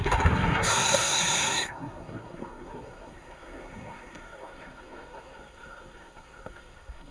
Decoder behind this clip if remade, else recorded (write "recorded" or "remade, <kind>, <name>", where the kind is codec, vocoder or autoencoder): remade, codec, SNAC